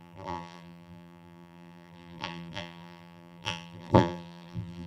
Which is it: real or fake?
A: fake